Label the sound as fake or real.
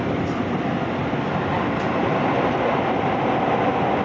real